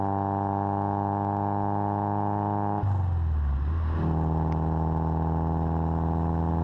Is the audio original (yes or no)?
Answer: yes